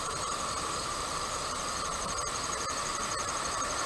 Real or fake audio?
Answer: fake